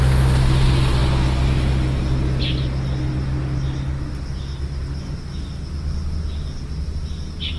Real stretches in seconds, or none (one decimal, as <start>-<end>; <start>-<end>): 0.0-7.6